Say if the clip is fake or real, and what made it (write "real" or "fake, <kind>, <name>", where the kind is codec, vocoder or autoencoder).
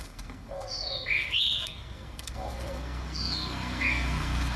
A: fake, codec, SNAC